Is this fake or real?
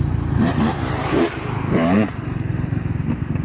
fake